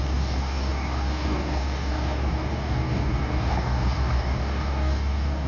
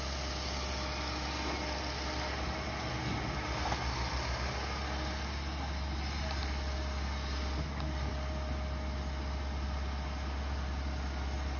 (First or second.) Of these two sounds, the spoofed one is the first